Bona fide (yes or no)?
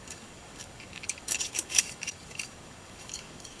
no